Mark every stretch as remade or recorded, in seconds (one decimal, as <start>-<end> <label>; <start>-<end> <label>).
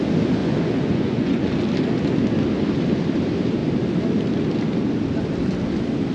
0.0-0.4 recorded; 0.4-1.5 remade; 1.5-6.1 recorded